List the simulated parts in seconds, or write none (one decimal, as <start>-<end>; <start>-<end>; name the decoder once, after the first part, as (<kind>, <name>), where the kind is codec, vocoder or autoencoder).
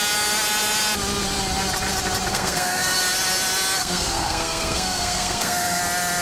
2.3-3.0 (codec, SNAC); 3.8-5.8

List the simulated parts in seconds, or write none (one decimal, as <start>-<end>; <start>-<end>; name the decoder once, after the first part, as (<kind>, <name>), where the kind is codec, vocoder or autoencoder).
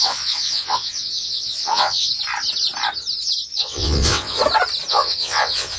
0.0-2.1 (vocoder, WaveNeXt); 3.6-4.4; 4.9-5.8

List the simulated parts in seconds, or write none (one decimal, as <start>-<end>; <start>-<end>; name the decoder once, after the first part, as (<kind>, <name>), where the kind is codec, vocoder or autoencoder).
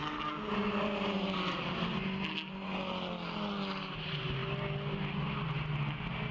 3.8-4.4 (vocoder, BigVGAN v2)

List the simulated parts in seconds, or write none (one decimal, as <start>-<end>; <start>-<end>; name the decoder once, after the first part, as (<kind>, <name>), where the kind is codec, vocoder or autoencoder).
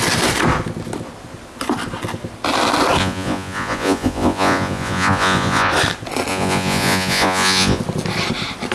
3.0-5.7 (vocoder, Vocos); 6.3-7.8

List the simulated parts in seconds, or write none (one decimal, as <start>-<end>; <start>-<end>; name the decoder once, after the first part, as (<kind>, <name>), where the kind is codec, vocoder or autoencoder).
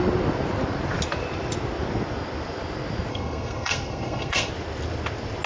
3.1-4.5 (codec, SNAC)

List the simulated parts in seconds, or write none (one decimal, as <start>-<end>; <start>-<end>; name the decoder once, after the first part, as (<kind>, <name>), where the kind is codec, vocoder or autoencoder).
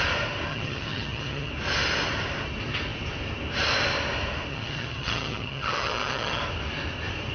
0.5-1.5 (vocoder, HiFi-GAN); 4.5-6.4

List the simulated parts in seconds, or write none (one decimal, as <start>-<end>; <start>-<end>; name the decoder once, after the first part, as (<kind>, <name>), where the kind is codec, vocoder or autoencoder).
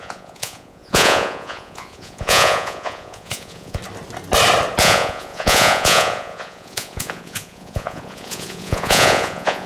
0.0-3.8 (vocoder, Vocos); 4.8-9.7